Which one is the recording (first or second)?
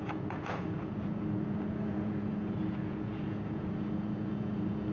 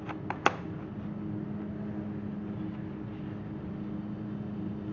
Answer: second